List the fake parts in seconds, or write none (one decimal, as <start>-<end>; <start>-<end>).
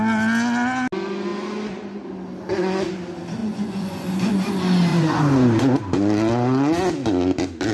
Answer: 3.4-4.3; 4.9-5.8